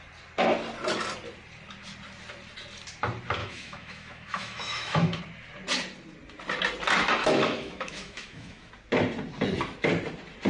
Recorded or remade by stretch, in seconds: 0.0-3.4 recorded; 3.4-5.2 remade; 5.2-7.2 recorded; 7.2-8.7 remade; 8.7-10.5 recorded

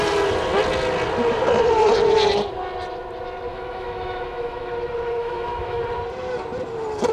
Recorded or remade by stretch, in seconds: 0.0-3.5 recorded; 3.5-4.7 remade; 4.7-5.2 recorded; 5.2-5.8 remade; 5.8-7.1 recorded

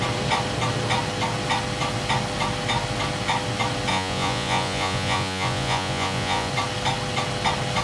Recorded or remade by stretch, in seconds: 0.0-3.9 recorded; 3.9-6.5 remade; 6.5-7.8 recorded

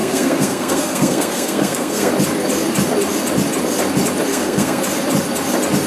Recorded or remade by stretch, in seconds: 0.0-2.1 remade; 2.1-4.3 recorded; 4.3-4.8 remade; 4.8-5.9 recorded

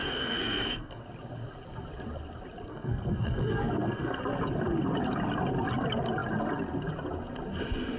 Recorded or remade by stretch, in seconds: 0.0-1.0 remade; 1.0-2.7 recorded; 2.7-4.2 remade; 4.2-8.0 recorded

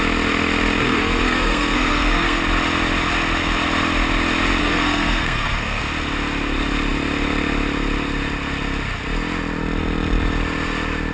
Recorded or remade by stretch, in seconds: 0.0-0.8 recorded; 0.8-2.4 remade; 2.4-4.6 recorded; 4.6-5.8 remade; 5.8-11.1 recorded

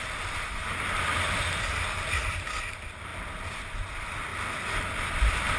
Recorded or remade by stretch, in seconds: 0.0-5.6 recorded

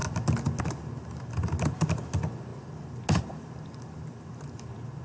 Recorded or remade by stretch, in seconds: 0.0-5.0 recorded